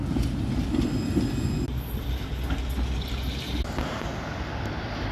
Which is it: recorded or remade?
recorded